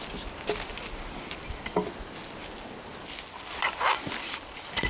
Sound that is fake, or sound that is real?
real